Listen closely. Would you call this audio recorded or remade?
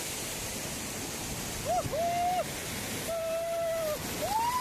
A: recorded